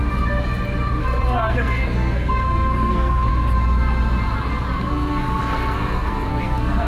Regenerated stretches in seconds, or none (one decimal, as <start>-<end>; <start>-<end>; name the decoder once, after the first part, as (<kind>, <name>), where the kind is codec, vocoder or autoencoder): 1.0-3.3 (codec, SNAC); 4.8-6.9